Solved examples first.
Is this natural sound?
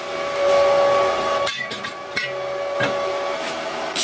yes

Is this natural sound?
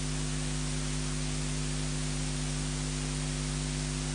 yes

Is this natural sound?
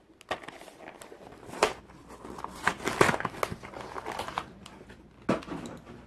yes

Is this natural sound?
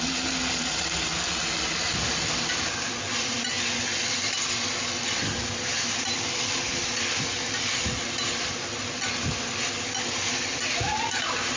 yes